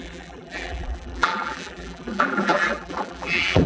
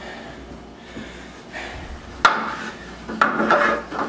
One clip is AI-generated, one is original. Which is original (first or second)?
second